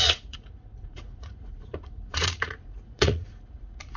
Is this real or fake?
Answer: fake